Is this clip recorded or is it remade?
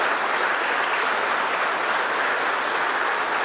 recorded